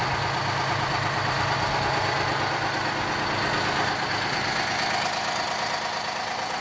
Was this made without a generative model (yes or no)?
yes